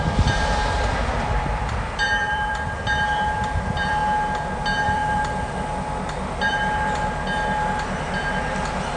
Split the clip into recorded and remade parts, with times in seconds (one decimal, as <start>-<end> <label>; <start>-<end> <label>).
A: 0.0-4.0 remade; 4.0-4.6 recorded; 4.6-9.0 remade